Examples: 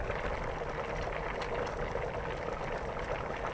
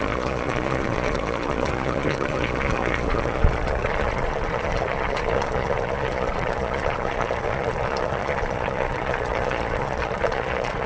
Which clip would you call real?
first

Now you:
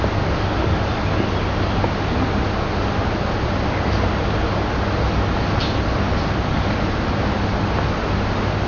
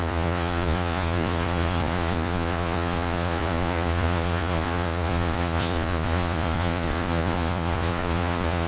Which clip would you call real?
first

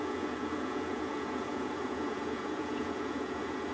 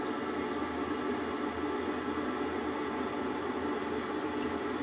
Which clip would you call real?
second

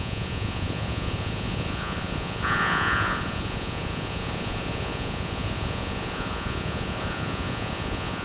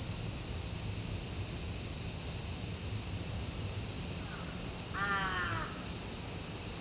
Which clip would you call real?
second